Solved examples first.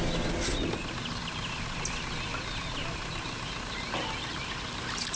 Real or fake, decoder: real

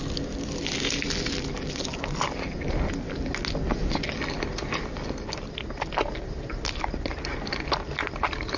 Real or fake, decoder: real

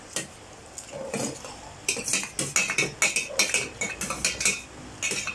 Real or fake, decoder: real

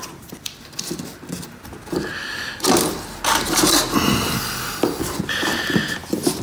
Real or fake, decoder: real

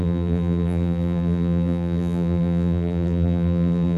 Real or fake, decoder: fake, vocoder, BigVGAN v2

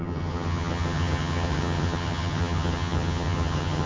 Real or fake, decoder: fake, vocoder, HiFi-GAN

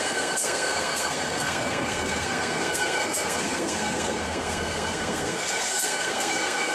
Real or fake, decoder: fake, codec, SNAC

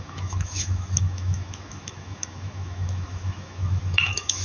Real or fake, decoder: fake, autoencoder, DAC-VAE